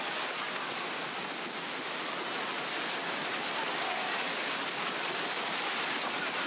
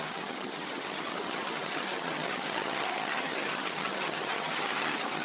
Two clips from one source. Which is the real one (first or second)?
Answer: first